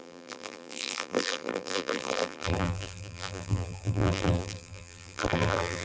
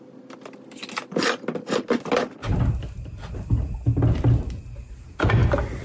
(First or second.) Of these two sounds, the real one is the second